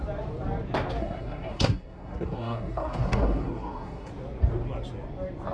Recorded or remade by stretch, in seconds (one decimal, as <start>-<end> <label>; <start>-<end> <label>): 0.0-1.0 recorded; 1.0-4.1 remade; 4.1-5.5 recorded